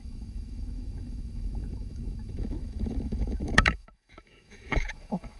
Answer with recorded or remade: remade